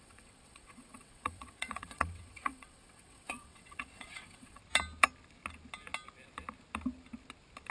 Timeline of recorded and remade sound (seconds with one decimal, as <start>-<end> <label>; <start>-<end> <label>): 0.0-4.6 remade; 4.6-7.7 recorded